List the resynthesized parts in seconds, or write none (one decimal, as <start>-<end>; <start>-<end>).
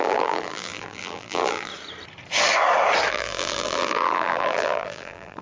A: 0.0-1.7; 3.1-5.4